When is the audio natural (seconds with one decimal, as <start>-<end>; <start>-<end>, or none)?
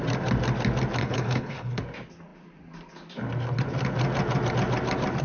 0.0-1.0; 1.8-5.2